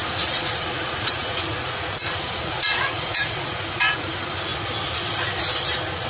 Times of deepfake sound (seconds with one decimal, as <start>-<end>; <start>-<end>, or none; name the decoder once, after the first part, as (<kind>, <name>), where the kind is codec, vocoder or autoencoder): 0.0-4.5 (vocoder, Vocos)